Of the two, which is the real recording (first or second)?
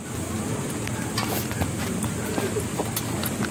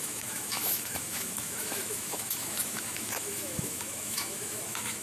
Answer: first